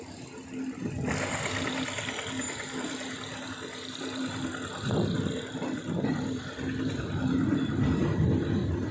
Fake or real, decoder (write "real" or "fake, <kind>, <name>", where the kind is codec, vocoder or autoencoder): real